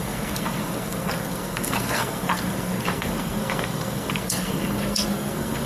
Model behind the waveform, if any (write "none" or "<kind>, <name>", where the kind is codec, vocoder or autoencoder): codec, SNAC